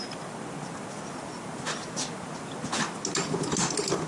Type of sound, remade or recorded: recorded